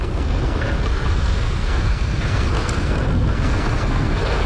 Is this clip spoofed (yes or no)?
yes